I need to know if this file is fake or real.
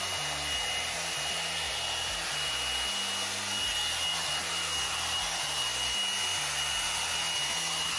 real